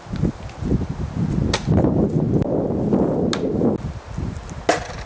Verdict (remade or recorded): recorded